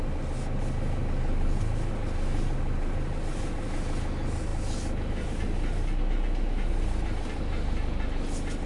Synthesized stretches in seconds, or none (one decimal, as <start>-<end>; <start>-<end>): none